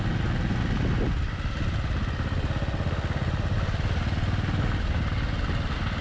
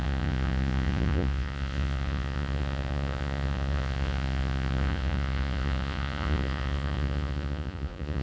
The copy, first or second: second